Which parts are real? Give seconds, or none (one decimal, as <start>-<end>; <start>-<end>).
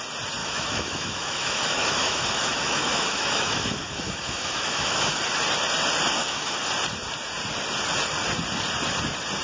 0.0-0.4; 5.2-6.2; 6.7-9.4